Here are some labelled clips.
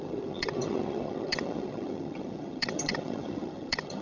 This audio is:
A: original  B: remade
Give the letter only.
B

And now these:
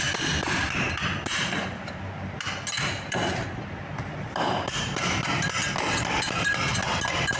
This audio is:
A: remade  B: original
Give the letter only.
B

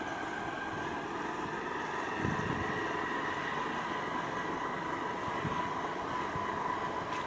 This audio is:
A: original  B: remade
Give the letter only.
A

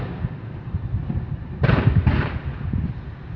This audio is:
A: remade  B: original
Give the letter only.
B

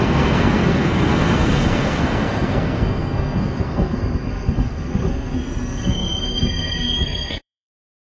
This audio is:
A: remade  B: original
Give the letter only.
A